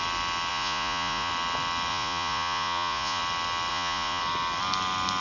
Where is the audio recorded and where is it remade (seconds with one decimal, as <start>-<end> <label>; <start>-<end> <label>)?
0.0-0.5 recorded; 0.5-1.3 remade; 1.3-1.9 recorded; 1.9-3.2 remade; 3.2-3.7 recorded; 3.7-4.2 remade; 4.2-5.2 recorded